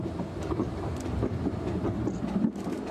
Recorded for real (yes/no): yes